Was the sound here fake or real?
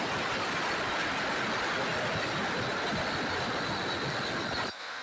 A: real